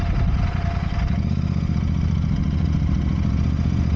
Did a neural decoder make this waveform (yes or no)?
no